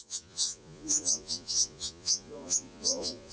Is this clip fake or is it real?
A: fake